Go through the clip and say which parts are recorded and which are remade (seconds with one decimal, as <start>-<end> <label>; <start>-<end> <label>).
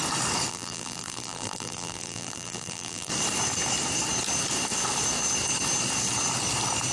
0.0-0.5 recorded; 0.5-3.1 remade; 3.1-6.9 recorded